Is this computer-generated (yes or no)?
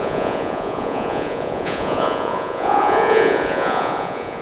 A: yes